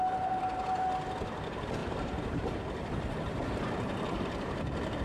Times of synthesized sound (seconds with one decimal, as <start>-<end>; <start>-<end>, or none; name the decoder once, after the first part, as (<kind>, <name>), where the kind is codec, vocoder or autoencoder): 1.8-5.0 (vocoder, BigVGAN v2)